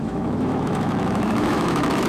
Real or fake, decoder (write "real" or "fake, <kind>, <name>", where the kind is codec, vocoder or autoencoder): fake, autoencoder, DAC-VAE